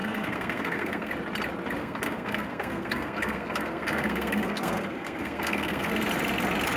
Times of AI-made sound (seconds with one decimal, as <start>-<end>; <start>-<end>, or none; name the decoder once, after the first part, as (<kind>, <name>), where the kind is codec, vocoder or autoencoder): 0.0-1.1 (codec, SNAC); 1.8-5.9